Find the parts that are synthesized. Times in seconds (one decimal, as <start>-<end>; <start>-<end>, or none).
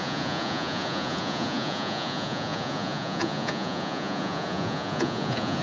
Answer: 0.0-5.6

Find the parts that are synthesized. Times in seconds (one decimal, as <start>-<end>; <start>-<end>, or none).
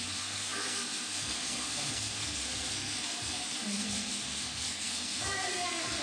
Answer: 0.0-6.0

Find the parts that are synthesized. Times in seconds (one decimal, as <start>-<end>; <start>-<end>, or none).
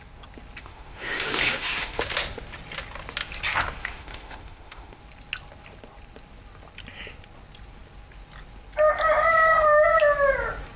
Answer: 0.6-2.0; 3.8-5.0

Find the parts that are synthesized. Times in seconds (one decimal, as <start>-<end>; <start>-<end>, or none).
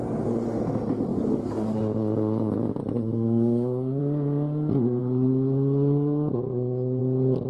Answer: 1.1-1.8; 2.8-4.0; 5.0-7.0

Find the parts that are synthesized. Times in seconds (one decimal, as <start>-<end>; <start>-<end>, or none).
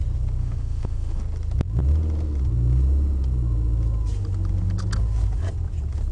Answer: 0.4-1.2